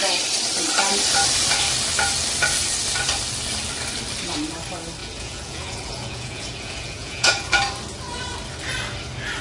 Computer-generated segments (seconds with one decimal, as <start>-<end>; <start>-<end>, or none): 5.0-7.5